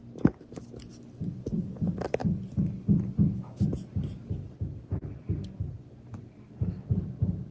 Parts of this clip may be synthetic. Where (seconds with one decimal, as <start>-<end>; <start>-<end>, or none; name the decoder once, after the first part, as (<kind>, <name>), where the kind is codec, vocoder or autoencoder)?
none